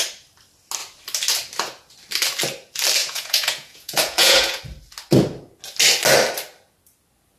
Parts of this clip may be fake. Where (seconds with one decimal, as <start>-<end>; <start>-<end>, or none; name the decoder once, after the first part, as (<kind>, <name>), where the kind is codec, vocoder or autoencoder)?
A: 3.0-4.6 (vocoder, Vocos)